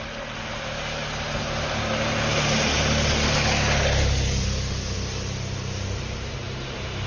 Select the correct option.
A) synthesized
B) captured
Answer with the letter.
B